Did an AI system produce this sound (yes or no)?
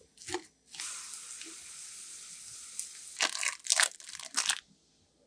no